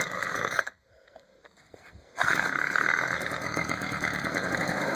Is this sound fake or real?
fake